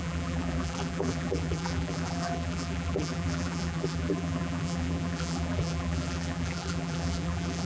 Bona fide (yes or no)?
no